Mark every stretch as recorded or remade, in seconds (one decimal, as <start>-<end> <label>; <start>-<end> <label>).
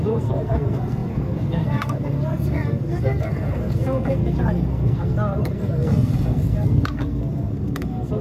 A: 0.0-8.2 remade